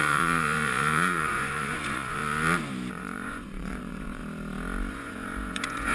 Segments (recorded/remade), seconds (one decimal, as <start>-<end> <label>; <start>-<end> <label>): 0.0-2.2 remade; 2.2-2.9 recorded; 2.9-4.2 remade; 4.2-4.9 recorded; 4.9-5.9 remade